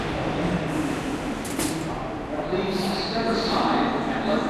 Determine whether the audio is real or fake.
real